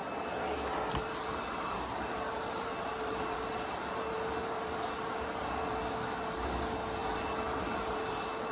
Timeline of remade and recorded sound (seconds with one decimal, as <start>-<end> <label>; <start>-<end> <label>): 0.0-0.9 recorded; 0.9-5.8 remade; 5.8-7.0 recorded; 7.0-8.5 remade